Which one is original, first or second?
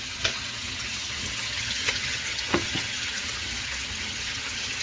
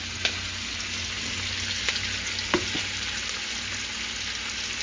second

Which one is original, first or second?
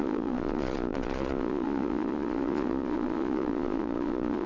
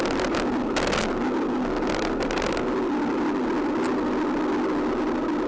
second